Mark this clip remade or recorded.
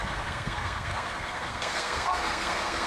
remade